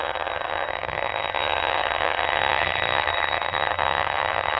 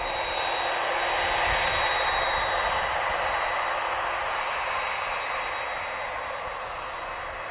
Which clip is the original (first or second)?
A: second